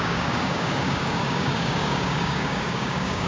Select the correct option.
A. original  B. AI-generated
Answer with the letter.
B